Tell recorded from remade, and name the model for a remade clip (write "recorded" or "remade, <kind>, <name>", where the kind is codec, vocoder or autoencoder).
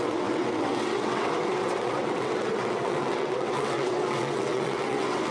remade, vocoder, WaveNeXt